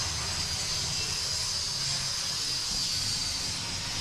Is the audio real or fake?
real